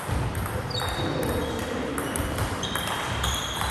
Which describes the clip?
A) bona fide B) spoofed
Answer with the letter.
B